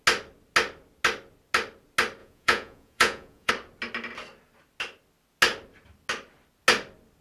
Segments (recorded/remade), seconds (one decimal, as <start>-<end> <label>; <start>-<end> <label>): 0.0-2.2 recorded; 2.2-3.5 remade; 3.5-7.2 recorded